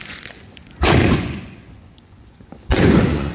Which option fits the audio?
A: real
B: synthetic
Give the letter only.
B